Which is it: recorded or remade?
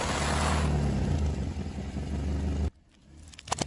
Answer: recorded